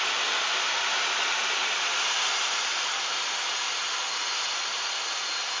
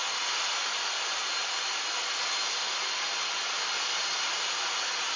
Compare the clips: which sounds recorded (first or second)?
second